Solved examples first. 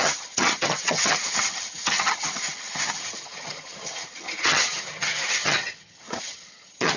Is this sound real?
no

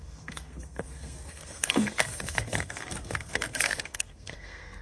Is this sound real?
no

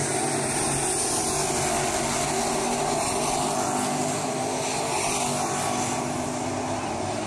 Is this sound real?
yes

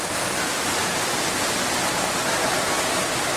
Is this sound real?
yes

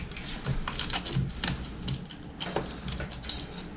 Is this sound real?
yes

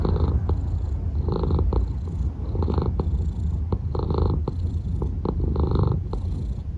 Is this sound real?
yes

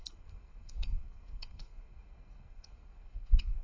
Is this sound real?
no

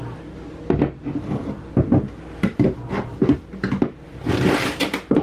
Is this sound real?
yes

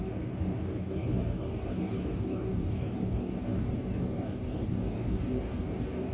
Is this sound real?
no